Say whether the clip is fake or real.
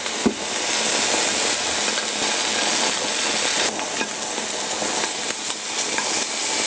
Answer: real